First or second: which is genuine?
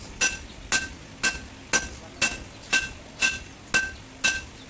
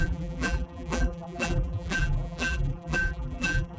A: first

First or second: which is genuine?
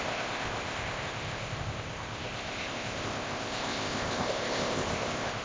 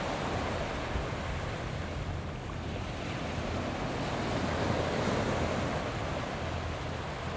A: second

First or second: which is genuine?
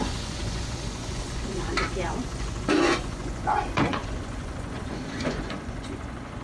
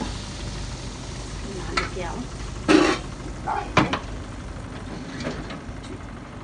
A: second